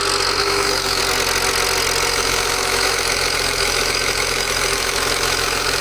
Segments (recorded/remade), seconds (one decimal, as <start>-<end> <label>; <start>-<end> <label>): 0.0-0.4 recorded; 0.4-1.0 remade; 1.0-2.1 recorded; 2.1-5.8 remade